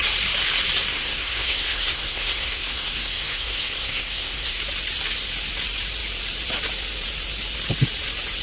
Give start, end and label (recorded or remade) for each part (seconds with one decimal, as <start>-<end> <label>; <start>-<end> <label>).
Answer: 0.0-0.9 recorded; 0.9-4.6 remade; 4.6-8.4 recorded